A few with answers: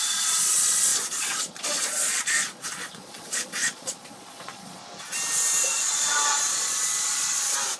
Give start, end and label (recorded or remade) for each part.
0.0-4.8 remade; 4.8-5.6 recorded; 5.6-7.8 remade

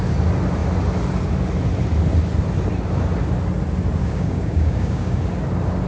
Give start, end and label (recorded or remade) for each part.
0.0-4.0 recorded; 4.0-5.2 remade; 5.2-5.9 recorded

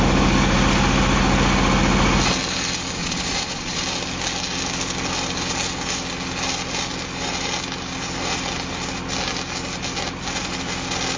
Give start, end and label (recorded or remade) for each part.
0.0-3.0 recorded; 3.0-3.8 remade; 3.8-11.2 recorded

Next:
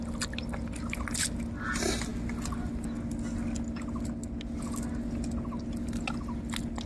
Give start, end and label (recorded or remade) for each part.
0.0-6.9 recorded

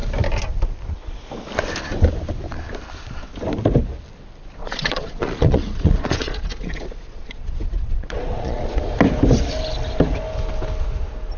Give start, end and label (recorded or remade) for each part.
0.0-4.6 recorded; 4.6-8.8 remade; 8.8-11.4 recorded

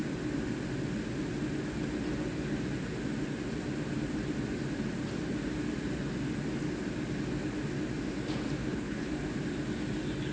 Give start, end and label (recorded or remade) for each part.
0.0-8.6 recorded; 8.6-9.1 remade; 9.1-10.3 recorded

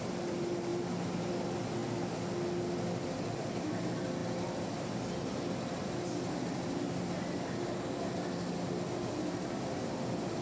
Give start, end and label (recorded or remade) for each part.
0.0-10.4 recorded

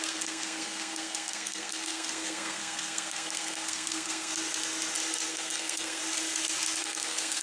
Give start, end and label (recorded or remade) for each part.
0.0-4.3 remade; 4.3-5.3 recorded; 5.3-6.0 remade; 6.0-6.8 recorded; 6.8-7.4 remade